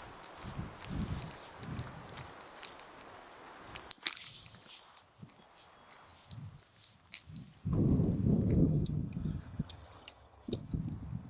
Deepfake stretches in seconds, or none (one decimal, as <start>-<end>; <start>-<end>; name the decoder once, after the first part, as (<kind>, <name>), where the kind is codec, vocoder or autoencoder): 8.6-10.8 (vocoder, HiFi-GAN)